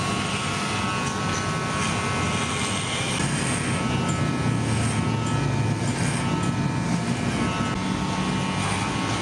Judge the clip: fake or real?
real